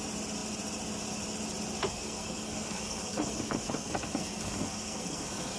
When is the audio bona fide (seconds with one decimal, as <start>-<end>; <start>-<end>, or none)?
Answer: 0.0-1.8